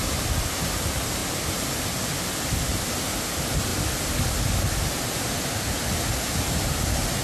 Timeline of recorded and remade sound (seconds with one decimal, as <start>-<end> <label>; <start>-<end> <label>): 0.0-1.2 remade; 1.2-2.9 recorded; 2.9-3.7 remade; 3.7-6.4 recorded; 6.4-7.2 remade